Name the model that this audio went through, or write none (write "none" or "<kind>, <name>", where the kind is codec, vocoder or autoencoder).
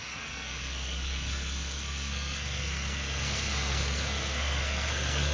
codec, SNAC